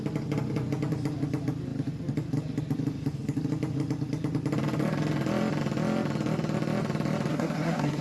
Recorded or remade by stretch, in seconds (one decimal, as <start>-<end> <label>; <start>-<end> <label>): 0.0-7.3 recorded; 7.3-8.0 remade